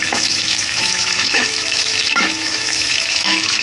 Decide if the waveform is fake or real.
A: fake